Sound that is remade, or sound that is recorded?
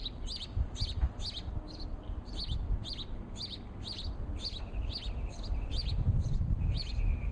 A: recorded